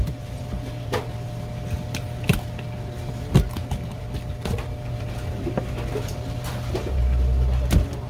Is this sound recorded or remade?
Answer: recorded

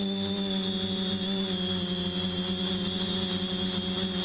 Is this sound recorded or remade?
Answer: recorded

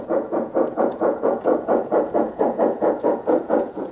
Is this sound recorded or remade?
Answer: remade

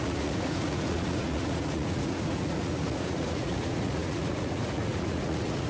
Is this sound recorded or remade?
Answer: remade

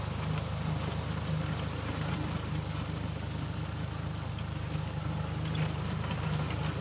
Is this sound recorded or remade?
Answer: recorded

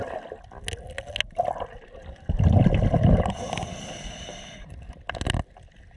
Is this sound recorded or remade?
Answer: recorded